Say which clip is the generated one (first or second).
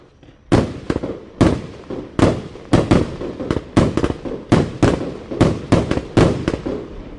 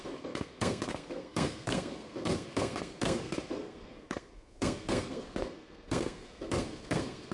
second